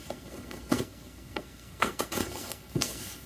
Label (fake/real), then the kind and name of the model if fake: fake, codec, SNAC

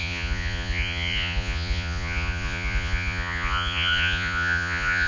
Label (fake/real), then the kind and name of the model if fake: fake, vocoder, Vocos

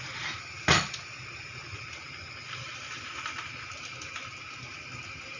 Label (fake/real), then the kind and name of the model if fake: real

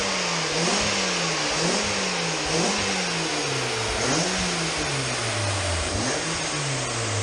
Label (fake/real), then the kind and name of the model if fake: real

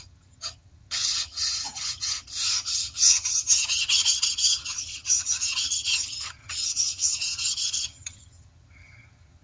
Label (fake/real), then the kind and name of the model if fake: fake, vocoder, HiFi-GAN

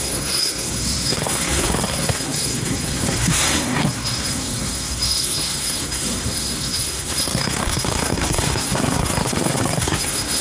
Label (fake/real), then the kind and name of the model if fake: fake, codec, SNAC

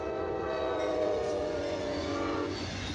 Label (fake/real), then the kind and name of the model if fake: fake, vocoder, Vocos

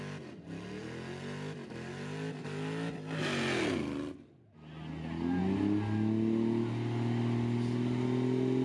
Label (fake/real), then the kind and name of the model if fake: real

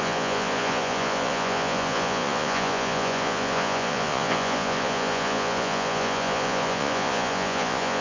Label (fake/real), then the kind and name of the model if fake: fake, vocoder, Vocos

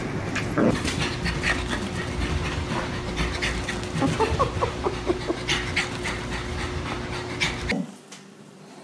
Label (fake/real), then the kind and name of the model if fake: real